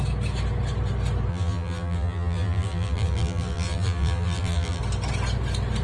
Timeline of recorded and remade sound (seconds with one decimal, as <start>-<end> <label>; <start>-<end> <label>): 0.0-1.3 recorded; 1.3-4.8 remade; 4.8-5.8 recorded